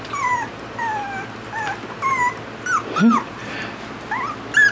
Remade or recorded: recorded